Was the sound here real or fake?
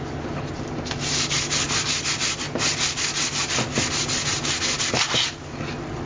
real